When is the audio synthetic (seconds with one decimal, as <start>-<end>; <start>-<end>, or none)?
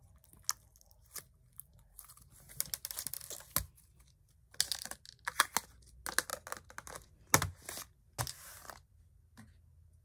none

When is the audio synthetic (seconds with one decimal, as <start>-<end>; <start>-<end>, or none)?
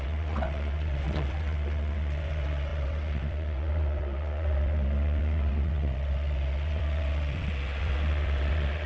0.0-8.9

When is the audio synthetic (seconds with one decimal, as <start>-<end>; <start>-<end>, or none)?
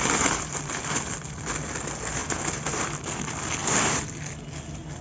none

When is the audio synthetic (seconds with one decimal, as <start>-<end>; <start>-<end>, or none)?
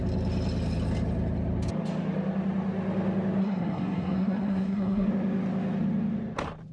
3.4-5.1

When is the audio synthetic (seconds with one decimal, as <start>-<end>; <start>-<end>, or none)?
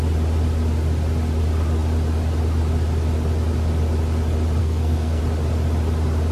4.6-5.2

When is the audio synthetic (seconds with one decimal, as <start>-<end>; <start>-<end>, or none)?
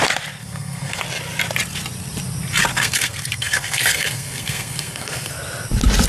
0.4-1.0; 2.7-5.3